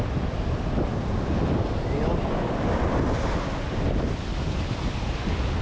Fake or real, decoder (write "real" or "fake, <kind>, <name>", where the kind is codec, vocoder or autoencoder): real